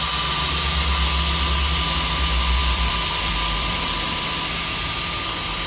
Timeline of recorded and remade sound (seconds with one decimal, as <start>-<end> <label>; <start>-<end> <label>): 0.0-2.6 recorded; 2.6-3.9 remade; 3.9-5.7 recorded